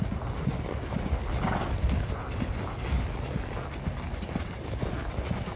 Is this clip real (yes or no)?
yes